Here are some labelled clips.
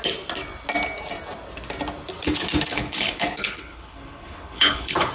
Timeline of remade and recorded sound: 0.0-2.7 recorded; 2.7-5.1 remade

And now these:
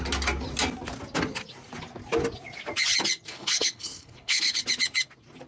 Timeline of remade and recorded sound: 0.0-3.3 recorded; 3.3-4.6 remade; 4.6-5.5 recorded